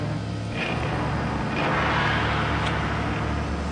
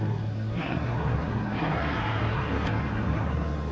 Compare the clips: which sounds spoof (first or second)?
second